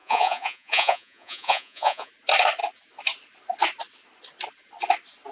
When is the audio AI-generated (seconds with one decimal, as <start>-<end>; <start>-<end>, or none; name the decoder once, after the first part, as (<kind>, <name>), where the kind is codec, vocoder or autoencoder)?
0.0-2.1 (vocoder, Vocos)